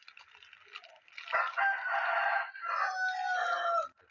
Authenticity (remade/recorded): recorded